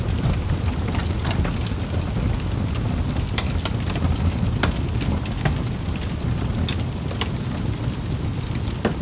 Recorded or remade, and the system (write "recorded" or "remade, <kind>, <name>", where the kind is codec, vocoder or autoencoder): recorded